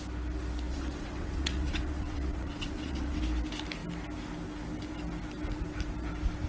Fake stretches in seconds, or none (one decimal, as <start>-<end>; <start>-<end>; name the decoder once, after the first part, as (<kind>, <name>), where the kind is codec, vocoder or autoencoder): 0.7-3.2 (vocoder, WaveNeXt)